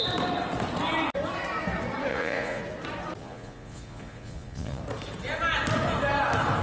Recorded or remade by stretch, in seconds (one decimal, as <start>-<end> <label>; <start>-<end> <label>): 0.0-2.1 recorded; 2.1-2.6 remade; 2.6-3.2 recorded; 3.2-4.8 remade; 4.8-6.6 recorded

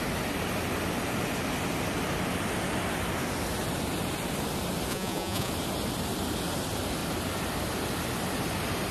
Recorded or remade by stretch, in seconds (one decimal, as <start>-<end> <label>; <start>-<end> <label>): 0.0-4.9 recorded; 4.9-5.5 remade; 5.5-8.9 recorded

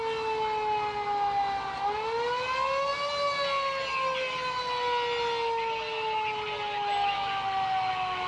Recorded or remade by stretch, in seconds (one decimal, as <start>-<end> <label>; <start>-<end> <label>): 0.0-8.3 recorded

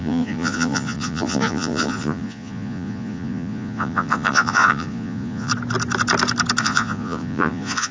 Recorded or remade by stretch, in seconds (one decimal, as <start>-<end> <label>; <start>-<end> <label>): 0.0-5.5 remade; 5.5-6.6 recorded; 6.6-7.9 remade

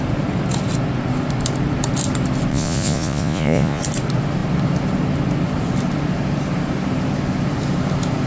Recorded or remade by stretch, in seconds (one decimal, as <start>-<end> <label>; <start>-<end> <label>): 0.0-2.5 recorded; 2.5-3.8 remade; 3.8-8.3 recorded

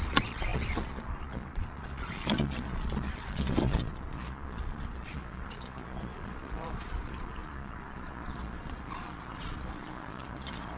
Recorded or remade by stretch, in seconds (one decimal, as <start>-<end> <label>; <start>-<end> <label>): 0.0-10.8 remade